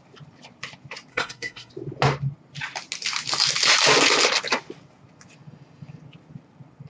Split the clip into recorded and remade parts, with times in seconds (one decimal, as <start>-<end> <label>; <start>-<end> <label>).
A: 0.0-1.1 recorded; 1.1-1.7 remade; 1.7-6.9 recorded